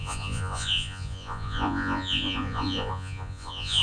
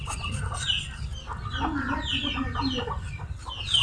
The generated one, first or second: first